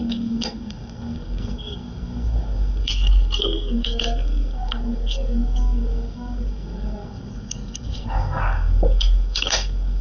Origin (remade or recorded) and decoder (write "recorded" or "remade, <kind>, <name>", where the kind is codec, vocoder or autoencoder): remade, codec, SNAC